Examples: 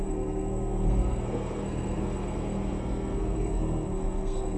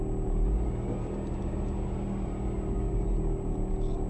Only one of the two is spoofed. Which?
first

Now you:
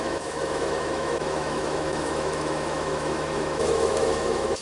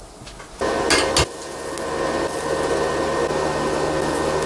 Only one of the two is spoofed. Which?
first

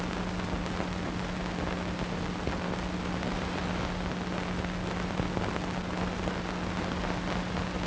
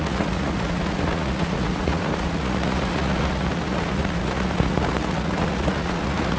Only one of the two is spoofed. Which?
second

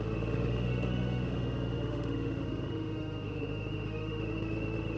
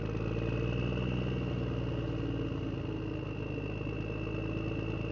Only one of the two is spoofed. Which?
first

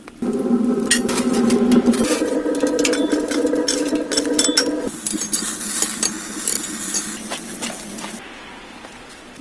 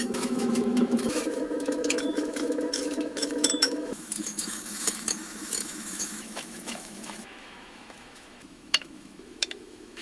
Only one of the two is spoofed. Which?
second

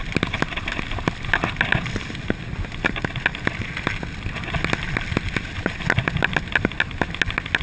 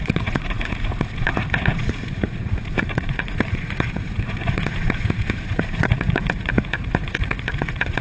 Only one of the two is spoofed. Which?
second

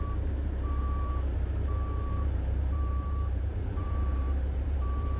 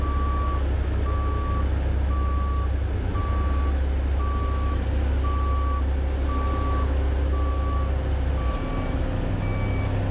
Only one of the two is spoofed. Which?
first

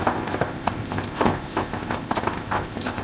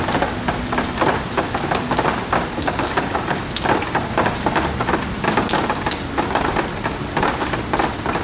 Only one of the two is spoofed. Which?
first